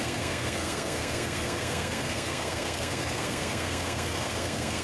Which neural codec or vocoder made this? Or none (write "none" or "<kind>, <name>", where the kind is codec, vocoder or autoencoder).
codec, SNAC